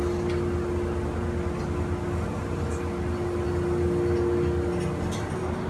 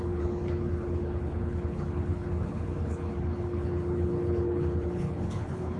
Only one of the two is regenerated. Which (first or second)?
second